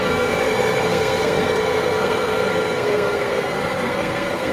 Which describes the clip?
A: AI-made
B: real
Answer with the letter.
A